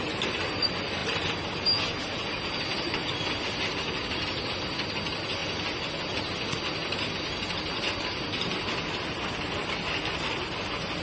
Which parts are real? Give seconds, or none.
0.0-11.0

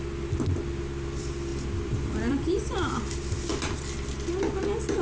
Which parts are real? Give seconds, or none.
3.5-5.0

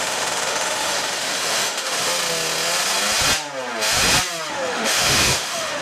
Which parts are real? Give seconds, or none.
2.1-4.5

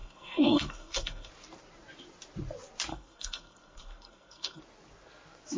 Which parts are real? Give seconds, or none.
1.3-2.9; 4.6-5.6

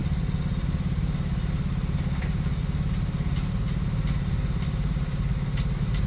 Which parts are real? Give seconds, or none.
0.0-6.1

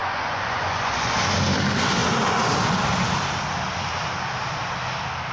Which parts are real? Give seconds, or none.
1.1-5.3

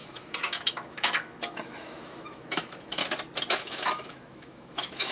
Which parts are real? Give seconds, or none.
3.0-3.5